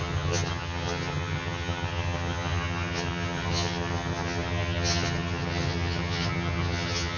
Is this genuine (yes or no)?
no